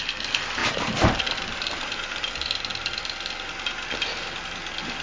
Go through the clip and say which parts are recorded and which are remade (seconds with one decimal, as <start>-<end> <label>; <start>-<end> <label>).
0.0-0.6 recorded; 0.6-2.3 remade; 2.3-5.0 recorded